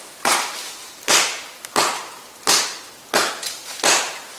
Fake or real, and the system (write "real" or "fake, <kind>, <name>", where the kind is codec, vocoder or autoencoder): real